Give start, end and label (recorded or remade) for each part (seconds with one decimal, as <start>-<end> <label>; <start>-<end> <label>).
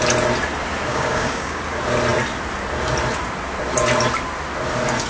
0.0-0.9 recorded; 0.9-1.6 remade; 1.6-5.1 recorded